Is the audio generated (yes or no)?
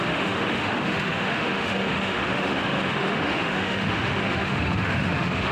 yes